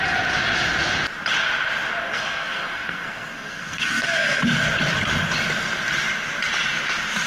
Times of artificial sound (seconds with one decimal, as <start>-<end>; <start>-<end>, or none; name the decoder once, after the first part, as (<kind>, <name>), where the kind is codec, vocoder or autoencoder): 2.1-4.4 (codec, SNAC)